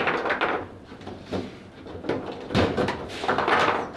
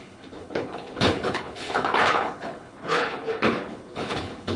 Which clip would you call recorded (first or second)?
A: first